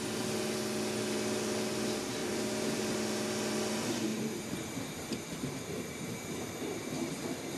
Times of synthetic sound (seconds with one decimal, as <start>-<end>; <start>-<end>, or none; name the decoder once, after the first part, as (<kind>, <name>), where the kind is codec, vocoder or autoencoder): 2.2-2.8 (vocoder, BigVGAN v2); 4.1-7.1